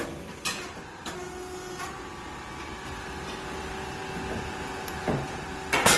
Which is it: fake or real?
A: real